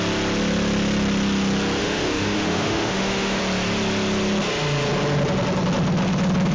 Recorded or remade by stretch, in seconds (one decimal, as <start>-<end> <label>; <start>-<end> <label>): 0.0-1.8 recorded; 1.8-3.4 remade; 3.4-6.5 recorded

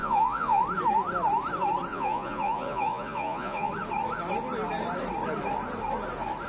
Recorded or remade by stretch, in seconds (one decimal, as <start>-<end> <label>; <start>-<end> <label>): 0.0-0.6 remade; 0.6-1.9 recorded; 1.9-3.7 remade; 3.7-6.5 recorded

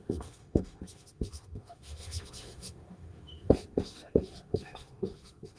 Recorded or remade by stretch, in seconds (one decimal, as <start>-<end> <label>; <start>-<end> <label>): 0.0-5.6 remade